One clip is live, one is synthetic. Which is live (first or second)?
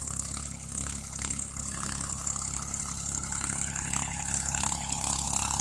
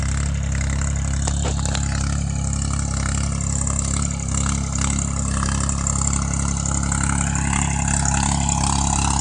second